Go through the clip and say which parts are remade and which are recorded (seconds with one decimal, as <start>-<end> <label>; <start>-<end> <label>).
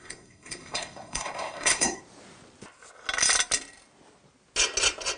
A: 0.0-2.0 remade; 2.0-5.2 recorded